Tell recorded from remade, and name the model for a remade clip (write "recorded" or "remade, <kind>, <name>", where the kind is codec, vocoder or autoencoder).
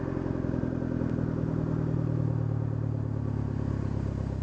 recorded